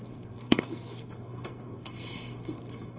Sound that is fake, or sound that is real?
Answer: fake